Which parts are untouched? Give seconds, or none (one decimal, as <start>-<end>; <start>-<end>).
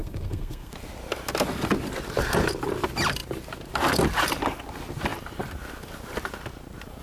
0.7-7.0